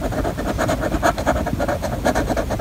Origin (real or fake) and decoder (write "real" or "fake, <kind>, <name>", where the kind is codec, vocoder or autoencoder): real